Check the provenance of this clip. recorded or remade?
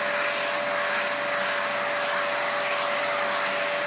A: recorded